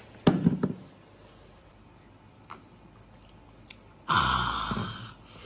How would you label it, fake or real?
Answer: real